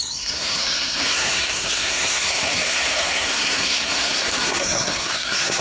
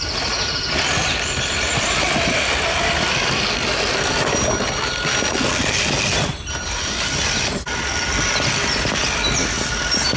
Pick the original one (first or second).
second